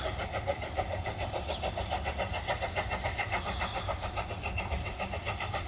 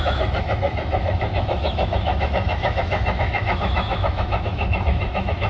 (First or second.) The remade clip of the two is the second